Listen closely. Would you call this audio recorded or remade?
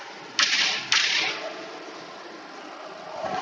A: recorded